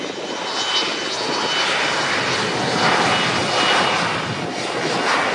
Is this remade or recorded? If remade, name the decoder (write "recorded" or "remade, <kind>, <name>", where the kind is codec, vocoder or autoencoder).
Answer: recorded